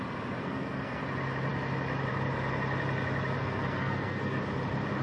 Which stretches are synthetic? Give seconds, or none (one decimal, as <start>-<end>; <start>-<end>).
0.4-1.0; 3.4-4.4